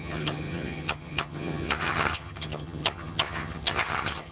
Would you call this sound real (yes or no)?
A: no